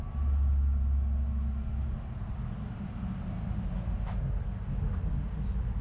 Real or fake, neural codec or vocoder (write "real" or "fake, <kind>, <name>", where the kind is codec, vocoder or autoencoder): real